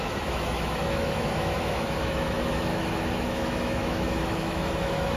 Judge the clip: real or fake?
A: fake